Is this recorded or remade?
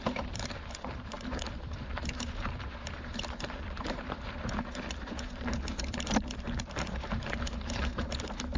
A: remade